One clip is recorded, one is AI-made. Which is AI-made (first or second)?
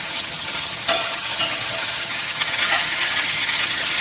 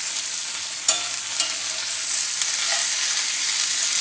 first